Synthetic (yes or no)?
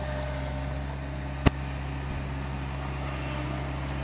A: no